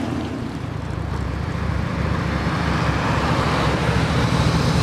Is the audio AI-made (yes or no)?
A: yes